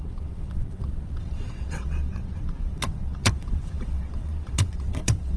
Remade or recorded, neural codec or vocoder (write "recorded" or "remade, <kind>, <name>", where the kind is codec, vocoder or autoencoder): remade, vocoder, WaveNeXt